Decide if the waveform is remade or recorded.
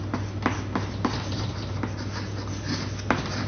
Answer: recorded